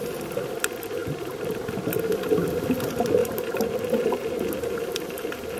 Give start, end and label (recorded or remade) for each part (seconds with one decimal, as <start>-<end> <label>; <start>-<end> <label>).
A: 0.0-1.0 recorded; 1.0-1.8 remade; 1.8-3.2 recorded; 3.2-5.6 remade